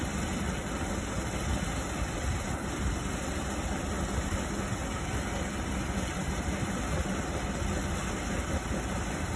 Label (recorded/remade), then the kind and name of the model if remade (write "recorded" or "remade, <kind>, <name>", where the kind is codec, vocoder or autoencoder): recorded